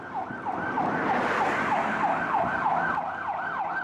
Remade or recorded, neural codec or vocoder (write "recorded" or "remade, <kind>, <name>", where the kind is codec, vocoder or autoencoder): recorded